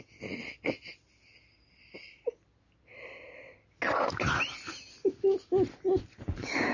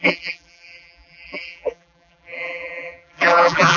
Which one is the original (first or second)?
first